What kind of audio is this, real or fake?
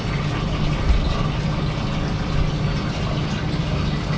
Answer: real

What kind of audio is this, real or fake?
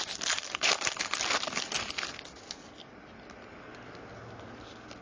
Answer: real